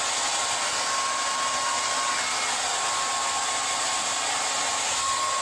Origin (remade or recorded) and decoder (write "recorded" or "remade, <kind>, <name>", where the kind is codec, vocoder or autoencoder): recorded